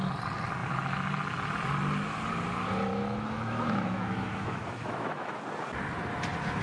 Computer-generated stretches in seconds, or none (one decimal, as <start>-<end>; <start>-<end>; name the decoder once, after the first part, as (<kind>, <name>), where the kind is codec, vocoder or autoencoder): 2.9-5.4 (autoencoder, DAC-VAE)